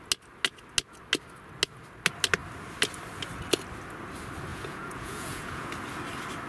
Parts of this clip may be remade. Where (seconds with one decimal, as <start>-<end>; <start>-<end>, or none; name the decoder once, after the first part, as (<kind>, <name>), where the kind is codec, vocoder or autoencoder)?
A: 4.5-5.7 (vocoder, Vocos)